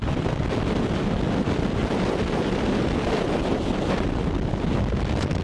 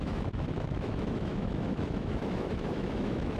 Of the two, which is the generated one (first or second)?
second